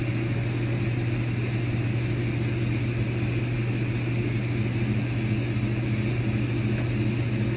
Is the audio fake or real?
real